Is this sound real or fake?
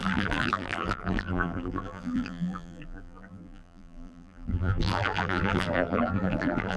fake